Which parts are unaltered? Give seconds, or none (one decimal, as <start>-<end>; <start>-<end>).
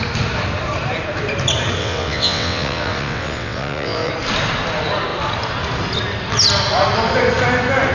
0.0-1.8; 4.1-7.9